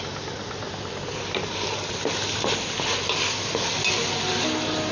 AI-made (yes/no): no